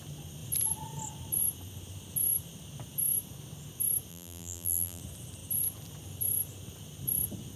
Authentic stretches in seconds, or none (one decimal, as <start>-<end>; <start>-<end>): 0.0-4.1; 5.0-7.6